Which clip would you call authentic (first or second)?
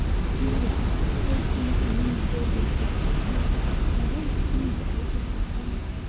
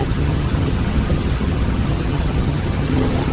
first